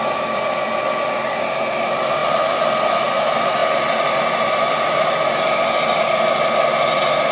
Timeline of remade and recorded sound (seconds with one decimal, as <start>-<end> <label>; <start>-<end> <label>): 0.0-7.3 recorded